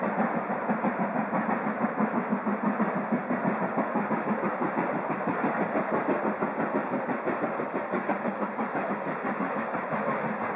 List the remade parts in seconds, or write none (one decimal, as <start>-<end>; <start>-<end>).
4.5-5.8; 6.8-8.9